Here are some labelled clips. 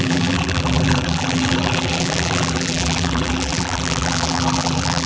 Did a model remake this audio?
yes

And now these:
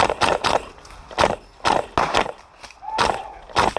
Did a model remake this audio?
no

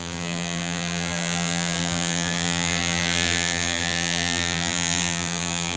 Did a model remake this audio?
yes